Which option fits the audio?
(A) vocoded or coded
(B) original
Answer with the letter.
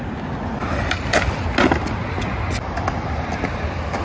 B